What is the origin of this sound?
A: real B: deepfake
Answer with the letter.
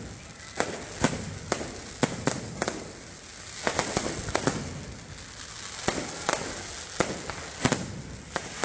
A